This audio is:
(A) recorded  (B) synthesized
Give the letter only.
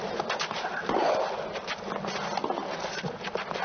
A